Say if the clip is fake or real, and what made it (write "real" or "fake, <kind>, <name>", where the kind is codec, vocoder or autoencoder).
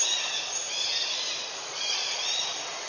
real